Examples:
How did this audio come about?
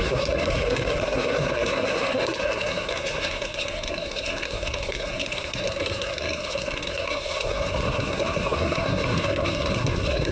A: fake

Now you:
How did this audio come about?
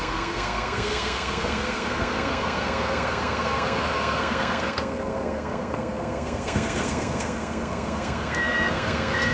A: fake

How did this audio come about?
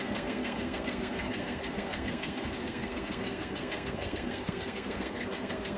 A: fake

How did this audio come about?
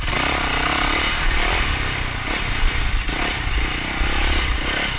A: real